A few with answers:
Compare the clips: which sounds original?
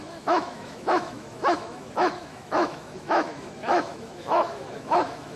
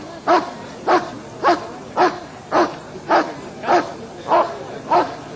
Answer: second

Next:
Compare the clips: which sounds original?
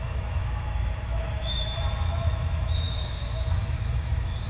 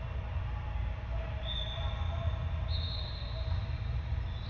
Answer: second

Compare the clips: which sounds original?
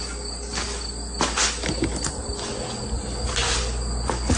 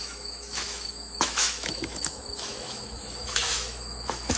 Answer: first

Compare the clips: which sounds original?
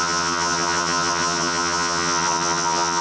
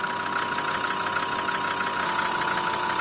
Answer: second